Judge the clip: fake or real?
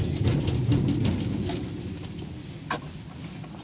real